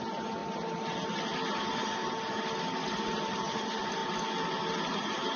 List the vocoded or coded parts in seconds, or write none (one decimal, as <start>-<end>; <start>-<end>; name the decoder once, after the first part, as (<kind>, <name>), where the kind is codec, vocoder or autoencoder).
0.0-0.4 (vocoder, BigVGAN v2); 2.9-4.0; 4.8-5.4